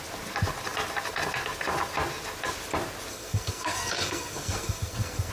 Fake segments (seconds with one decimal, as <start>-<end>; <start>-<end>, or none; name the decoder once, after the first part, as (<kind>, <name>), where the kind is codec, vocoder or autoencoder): 3.1-5.3 (codec, SNAC)